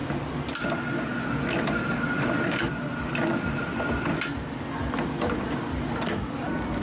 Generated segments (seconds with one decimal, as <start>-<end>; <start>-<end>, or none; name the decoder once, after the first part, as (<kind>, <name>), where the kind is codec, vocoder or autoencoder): 0.8-6.8 (vocoder, BigVGAN v2)